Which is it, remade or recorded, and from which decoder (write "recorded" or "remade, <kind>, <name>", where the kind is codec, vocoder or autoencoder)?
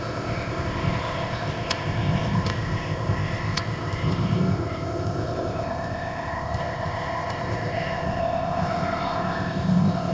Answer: remade, codec, ZipCodec